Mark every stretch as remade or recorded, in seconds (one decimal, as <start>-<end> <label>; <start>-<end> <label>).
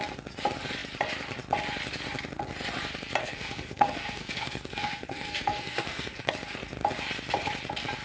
0.0-3.2 recorded; 3.2-6.3 remade; 6.3-8.0 recorded